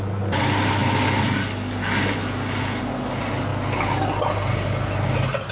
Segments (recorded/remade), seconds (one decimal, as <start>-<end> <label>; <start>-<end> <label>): 0.0-5.5 recorded